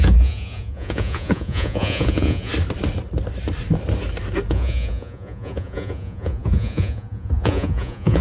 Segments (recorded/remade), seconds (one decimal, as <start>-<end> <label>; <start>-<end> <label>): 0.0-2.5 remade; 2.5-4.5 recorded; 4.5-8.2 remade